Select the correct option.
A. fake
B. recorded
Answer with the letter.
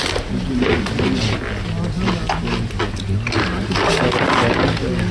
B